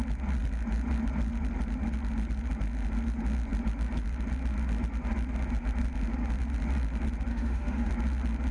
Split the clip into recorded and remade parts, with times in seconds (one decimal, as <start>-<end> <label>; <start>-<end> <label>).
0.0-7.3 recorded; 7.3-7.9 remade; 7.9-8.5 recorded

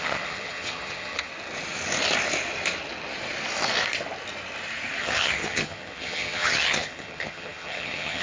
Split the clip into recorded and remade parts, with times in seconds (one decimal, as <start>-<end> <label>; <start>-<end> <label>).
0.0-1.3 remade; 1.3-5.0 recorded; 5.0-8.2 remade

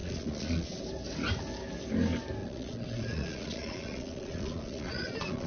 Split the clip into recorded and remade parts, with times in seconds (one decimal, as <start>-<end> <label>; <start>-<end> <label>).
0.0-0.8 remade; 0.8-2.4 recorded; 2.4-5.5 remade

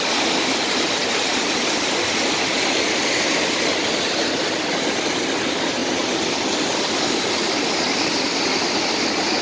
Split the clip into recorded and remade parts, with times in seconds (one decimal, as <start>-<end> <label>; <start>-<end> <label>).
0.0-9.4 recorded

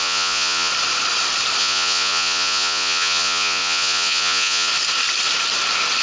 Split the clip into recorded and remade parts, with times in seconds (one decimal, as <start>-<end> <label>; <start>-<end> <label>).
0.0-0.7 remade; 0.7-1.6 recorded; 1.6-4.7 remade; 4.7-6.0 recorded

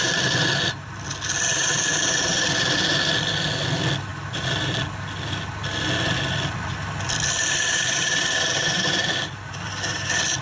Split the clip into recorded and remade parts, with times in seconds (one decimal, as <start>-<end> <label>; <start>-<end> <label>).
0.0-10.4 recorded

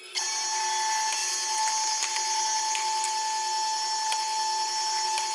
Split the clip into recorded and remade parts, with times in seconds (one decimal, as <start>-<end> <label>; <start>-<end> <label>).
0.0-5.3 recorded